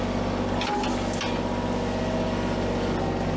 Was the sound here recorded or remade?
recorded